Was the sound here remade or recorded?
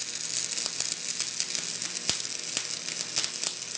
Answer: recorded